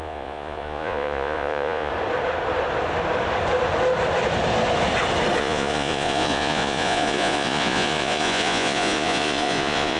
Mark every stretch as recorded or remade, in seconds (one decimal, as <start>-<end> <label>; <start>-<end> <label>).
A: 0.0-1.9 remade; 1.9-5.4 recorded; 5.4-10.0 remade